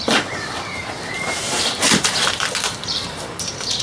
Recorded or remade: remade